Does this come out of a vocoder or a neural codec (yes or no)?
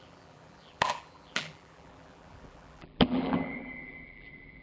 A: yes